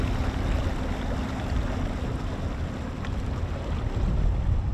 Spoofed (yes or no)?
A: no